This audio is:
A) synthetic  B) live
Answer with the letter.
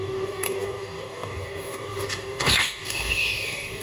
A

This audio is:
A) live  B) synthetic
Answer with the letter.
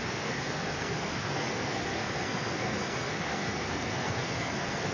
B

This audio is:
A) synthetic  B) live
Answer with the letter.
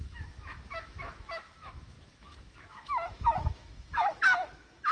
A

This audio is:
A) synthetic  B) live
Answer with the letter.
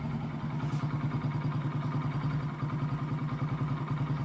B